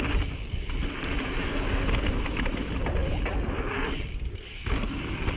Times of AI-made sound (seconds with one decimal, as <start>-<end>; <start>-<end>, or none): 0.0-5.4